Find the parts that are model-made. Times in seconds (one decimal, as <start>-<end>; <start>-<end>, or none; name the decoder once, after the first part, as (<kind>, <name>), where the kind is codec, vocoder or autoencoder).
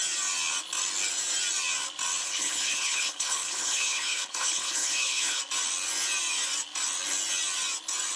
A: 2.2-5.4 (codec, HILCodec)